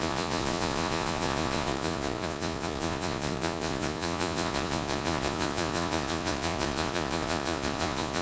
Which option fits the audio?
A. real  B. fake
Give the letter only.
B